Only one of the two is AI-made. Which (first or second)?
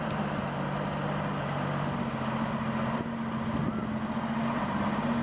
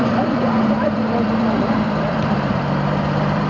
second